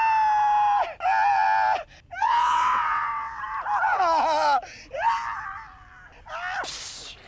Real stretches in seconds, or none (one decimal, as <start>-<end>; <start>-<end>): 0.0-2.2; 3.4-7.3